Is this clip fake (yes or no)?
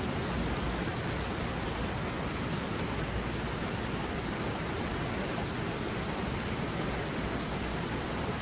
no